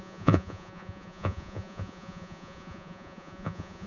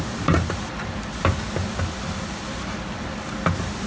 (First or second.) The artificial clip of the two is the first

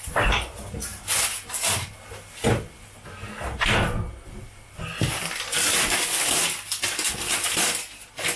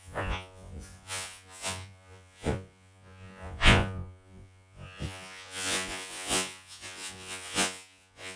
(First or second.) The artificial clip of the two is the second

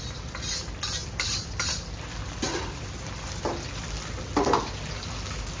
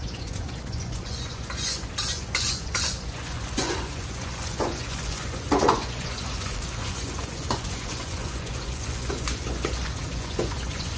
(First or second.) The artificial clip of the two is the second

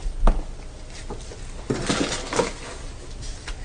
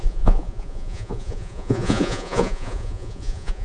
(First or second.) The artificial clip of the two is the second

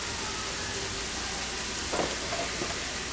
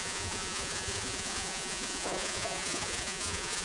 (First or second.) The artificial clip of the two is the second